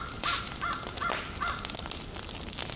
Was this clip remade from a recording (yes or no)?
no